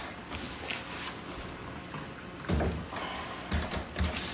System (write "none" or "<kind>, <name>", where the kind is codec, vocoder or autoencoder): none